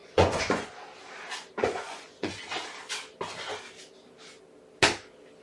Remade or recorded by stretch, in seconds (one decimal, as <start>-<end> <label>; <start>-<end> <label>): 0.0-0.7 remade; 0.7-1.6 recorded; 1.6-2.3 remade; 2.3-5.4 recorded